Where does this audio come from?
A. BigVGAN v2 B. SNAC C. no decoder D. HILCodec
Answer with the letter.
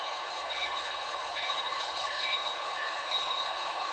D